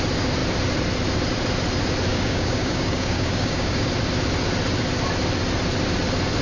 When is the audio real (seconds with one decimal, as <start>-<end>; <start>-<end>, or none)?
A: 0.0-2.1; 3.9-6.4